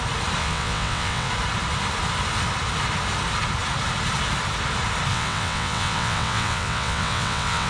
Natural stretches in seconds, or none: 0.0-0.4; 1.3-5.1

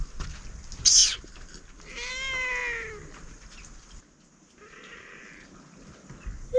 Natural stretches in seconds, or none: 0.0-6.6

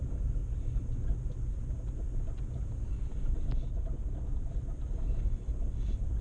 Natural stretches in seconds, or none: 0.0-6.2